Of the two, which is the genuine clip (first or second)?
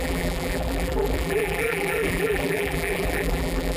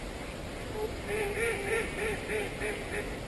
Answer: second